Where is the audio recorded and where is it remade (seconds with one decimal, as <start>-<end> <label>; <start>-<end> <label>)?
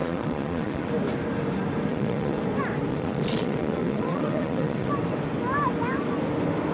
0.0-0.9 remade; 0.9-1.9 recorded; 1.9-2.4 remade; 2.4-2.9 recorded; 2.9-4.9 remade; 4.9-6.7 recorded